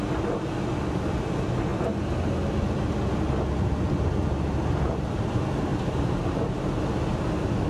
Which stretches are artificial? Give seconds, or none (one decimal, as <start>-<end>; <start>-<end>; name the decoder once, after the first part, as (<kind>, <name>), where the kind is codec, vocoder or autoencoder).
5.7-6.8 (vocoder, BigVGAN v2)